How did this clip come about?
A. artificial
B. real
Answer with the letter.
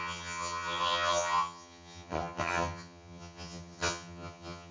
A